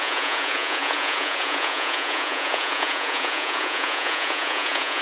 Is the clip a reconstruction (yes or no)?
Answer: yes